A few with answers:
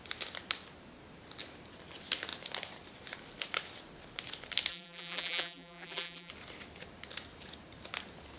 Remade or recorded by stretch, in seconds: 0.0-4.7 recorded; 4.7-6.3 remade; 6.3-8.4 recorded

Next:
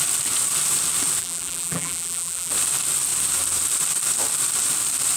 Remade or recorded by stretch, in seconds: 0.0-1.2 recorded; 1.2-2.5 remade; 2.5-5.2 recorded

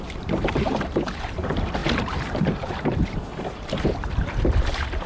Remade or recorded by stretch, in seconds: 0.0-5.1 remade

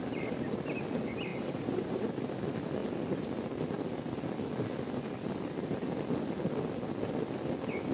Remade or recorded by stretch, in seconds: 0.0-1.3 recorded; 1.3-2.1 remade; 2.1-7.9 recorded

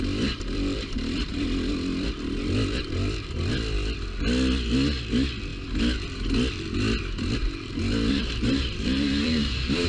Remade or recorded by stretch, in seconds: 0.0-8.2 recorded; 8.2-9.9 remade

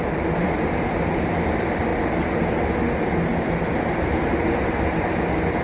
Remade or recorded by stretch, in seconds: 0.0-5.6 remade

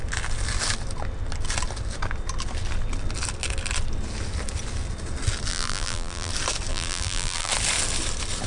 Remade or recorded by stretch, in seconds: 0.0-5.5 recorded; 5.5-6.3 remade; 6.3-6.7 recorded; 6.7-7.5 remade; 7.5-8.5 recorded

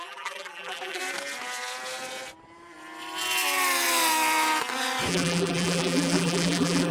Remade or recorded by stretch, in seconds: 0.0-1.0 remade; 1.0-5.1 recorded; 5.1-6.9 remade